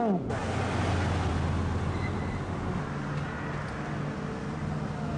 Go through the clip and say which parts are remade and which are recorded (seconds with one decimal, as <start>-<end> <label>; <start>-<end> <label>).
0.0-5.2 recorded